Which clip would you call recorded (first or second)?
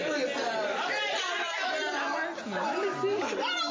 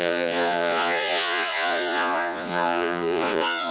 first